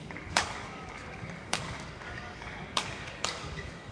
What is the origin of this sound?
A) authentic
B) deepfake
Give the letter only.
B